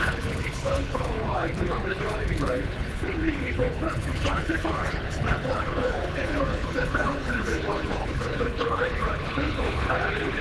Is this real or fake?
fake